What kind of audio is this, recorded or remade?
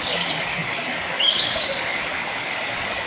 remade